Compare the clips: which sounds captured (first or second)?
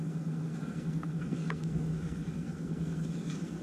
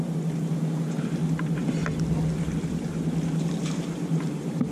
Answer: second